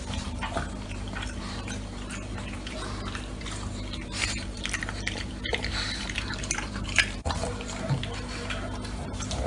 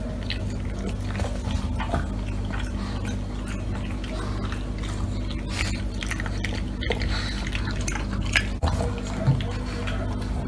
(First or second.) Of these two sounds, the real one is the second